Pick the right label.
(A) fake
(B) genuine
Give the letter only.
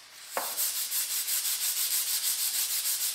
B